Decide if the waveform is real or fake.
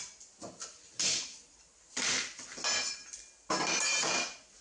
real